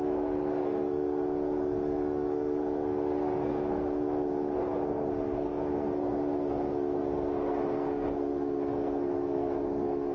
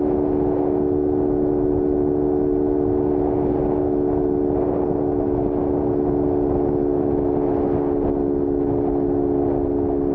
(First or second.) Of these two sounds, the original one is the second